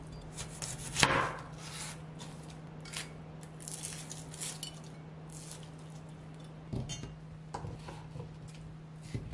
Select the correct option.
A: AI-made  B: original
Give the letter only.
B